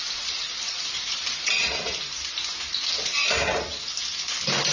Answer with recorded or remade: recorded